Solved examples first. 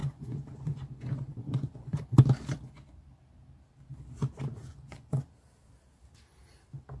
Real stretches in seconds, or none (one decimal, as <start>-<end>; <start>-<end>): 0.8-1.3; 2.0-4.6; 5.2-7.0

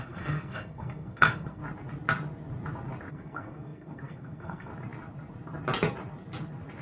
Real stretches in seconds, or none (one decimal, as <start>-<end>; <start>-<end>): 1.6-3.1; 4.7-6.8

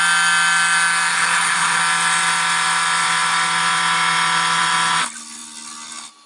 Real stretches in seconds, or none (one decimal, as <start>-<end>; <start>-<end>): 0.0-1.1; 1.8-6.3